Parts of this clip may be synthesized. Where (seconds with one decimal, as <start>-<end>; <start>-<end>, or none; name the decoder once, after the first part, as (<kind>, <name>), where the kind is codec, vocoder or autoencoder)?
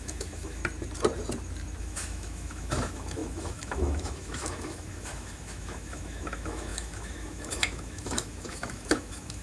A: 0.0-0.6 (autoencoder, DAC-VAE); 1.8-9.4